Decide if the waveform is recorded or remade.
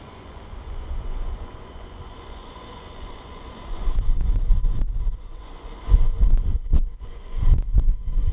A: remade